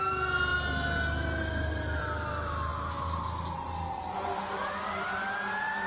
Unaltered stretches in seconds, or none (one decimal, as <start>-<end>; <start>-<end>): 0.0-5.9